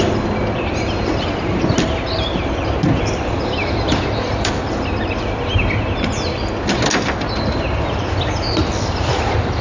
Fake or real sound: real